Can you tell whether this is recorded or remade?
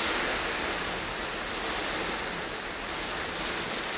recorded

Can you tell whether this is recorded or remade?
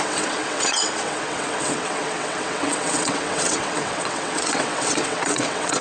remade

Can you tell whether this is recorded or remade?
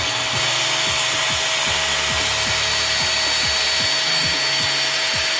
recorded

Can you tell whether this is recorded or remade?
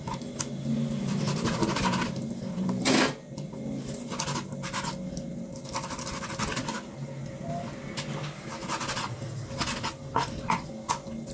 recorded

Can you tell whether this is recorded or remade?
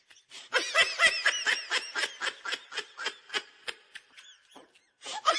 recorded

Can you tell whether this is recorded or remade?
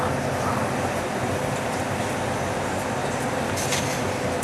recorded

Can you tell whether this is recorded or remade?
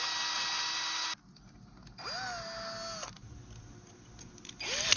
recorded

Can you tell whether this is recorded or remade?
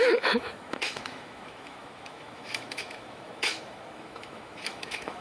remade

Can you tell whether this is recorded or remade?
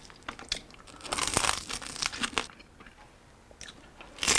recorded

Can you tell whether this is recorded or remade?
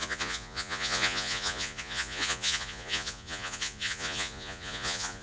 remade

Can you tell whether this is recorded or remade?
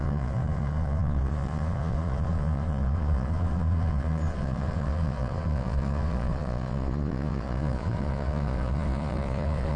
remade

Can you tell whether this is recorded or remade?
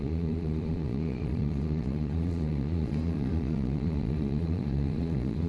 remade